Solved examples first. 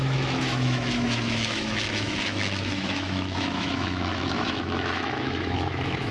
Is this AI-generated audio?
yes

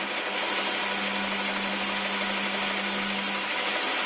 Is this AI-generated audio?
no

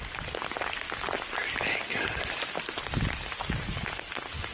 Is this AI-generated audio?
no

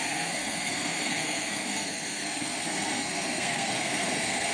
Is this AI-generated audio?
yes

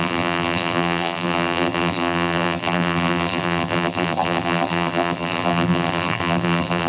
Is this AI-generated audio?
yes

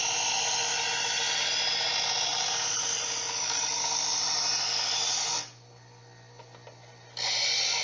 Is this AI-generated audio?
no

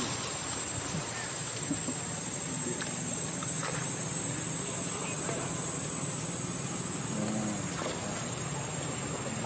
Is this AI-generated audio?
no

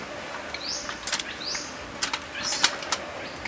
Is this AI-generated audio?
no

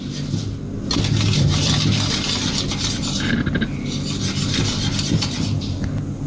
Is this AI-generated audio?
no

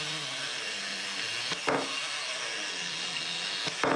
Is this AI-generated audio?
no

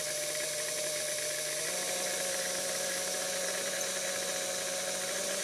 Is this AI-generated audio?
no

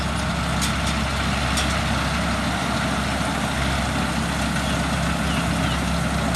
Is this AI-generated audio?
no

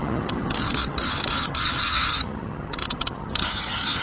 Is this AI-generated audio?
yes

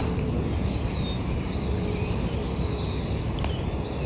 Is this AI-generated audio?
no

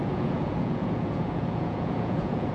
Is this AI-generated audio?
yes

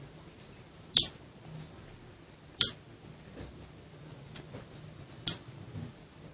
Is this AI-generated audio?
no